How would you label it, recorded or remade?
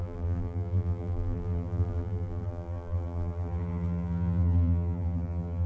remade